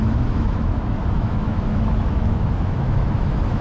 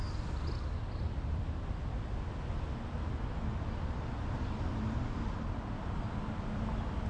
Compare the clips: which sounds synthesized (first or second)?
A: first